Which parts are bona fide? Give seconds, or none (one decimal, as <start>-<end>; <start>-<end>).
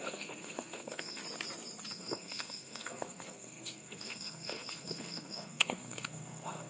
1.2-1.9